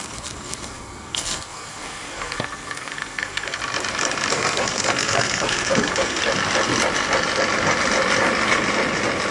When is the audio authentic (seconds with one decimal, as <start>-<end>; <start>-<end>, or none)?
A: 3.6-4.3; 6.2-9.3